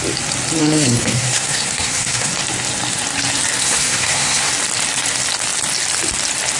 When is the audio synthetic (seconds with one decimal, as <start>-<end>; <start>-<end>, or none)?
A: 0.6-2.3; 3.6-4.5